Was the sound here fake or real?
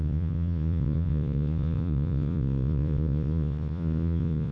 fake